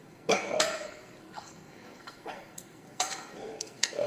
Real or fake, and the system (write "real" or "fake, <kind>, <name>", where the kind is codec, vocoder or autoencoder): fake, codec, SNAC